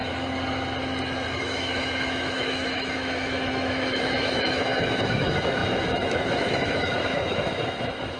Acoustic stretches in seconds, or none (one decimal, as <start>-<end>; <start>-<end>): 0.0-1.4